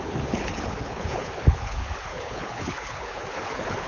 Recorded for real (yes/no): no